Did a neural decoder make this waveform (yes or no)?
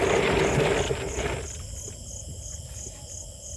no